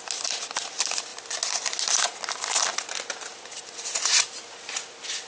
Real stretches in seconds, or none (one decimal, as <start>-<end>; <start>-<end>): 0.0-5.3